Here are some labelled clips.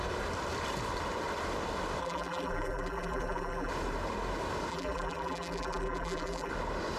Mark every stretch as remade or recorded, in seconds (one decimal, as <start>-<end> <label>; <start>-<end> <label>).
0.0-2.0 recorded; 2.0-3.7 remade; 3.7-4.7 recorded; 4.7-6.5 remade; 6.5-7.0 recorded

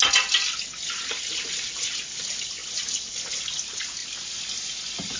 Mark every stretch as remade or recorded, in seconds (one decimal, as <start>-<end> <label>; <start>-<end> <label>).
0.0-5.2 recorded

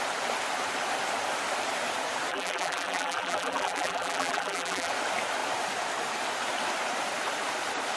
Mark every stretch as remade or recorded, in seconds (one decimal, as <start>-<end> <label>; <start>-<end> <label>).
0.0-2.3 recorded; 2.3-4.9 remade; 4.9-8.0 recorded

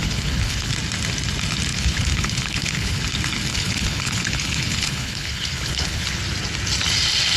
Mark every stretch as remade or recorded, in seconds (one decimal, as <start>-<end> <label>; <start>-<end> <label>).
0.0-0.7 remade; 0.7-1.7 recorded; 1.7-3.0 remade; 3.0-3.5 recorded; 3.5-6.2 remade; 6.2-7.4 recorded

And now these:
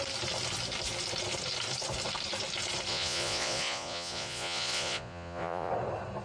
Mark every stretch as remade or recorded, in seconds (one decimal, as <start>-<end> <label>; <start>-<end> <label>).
0.0-2.9 recorded; 2.9-5.7 remade; 5.7-6.2 recorded

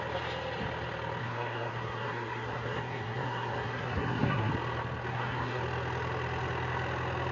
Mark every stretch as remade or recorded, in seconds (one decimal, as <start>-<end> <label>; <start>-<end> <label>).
0.0-1.2 recorded; 1.2-4.5 remade; 4.5-5.1 recorded; 5.1-5.6 remade; 5.6-7.3 recorded